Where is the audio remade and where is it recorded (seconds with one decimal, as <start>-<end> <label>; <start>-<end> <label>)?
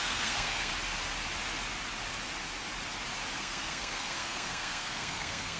0.0-0.7 remade; 0.7-3.4 recorded; 3.4-5.6 remade